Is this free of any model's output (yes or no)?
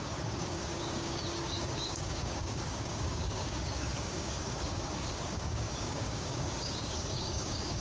no